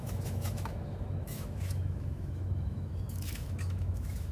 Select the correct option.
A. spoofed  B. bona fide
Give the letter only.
A